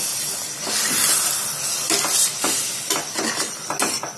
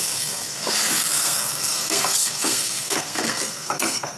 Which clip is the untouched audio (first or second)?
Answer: first